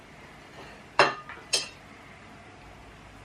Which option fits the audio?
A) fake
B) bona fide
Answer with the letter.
A